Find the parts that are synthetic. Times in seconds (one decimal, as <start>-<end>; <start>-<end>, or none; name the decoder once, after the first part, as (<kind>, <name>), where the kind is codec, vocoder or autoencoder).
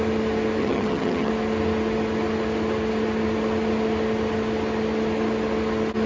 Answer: 0.6-1.3 (vocoder, HiFi-GAN)